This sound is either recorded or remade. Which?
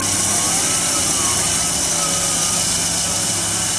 recorded